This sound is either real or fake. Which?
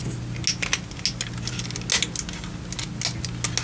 real